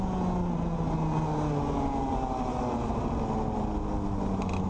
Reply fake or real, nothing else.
real